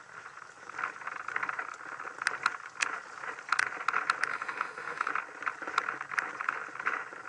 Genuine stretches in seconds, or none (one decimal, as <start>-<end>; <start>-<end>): 0.0-4.3; 5.1-7.3